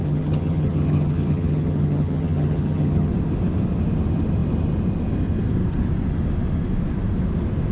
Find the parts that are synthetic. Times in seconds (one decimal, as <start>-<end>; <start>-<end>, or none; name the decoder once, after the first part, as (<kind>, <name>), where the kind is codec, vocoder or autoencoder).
0.0-3.1 (vocoder, HiFi-GAN)